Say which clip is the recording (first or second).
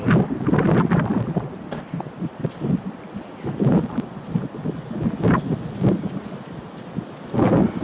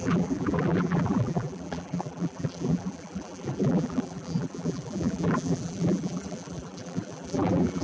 first